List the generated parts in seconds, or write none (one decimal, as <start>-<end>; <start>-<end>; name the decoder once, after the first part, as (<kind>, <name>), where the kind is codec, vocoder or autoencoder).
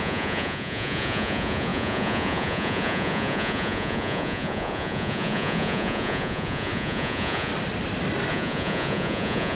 0.0-7.5 (vocoder, Vocos); 8.3-9.5